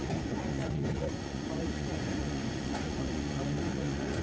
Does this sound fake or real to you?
fake